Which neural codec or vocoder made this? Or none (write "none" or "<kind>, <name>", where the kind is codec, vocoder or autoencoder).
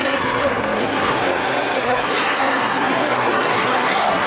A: codec, SNAC